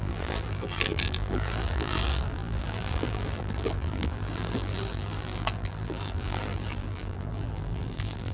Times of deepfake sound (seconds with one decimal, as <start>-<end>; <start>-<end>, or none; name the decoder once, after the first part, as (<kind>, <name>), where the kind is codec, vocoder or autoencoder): 0.0-8.3 (vocoder, BigVGAN v2)